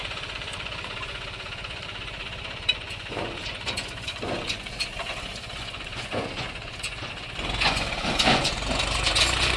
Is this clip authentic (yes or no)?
no